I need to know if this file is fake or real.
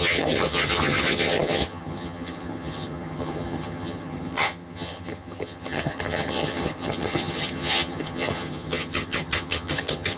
fake